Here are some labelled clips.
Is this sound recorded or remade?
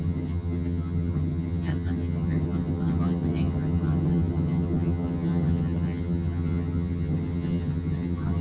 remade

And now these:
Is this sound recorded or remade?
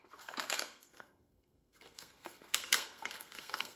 remade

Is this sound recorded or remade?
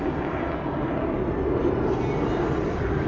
recorded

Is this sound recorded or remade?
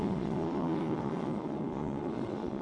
remade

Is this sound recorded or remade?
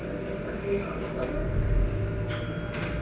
recorded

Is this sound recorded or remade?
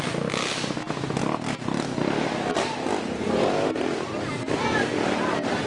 recorded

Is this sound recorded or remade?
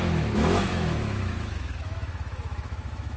remade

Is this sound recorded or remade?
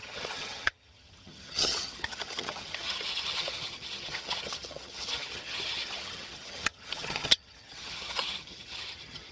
remade